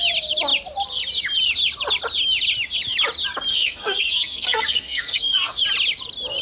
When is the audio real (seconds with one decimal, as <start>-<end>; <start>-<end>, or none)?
0.0-3.5; 5.6-6.4